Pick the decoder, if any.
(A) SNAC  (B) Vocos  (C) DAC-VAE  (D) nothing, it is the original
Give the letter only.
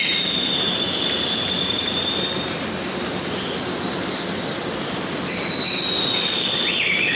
D